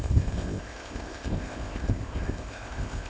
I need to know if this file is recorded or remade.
remade